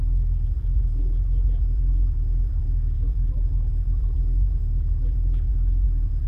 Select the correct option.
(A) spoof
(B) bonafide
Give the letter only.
A